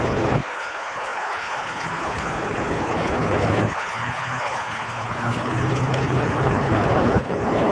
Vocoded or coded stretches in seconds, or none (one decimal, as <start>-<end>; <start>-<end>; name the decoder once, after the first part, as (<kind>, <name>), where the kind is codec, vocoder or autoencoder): 0.0-7.7 (codec, HILCodec)